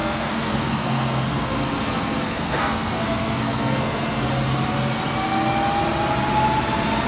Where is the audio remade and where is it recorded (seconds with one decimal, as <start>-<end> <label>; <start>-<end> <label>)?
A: 0.0-4.3 remade; 4.3-7.1 recorded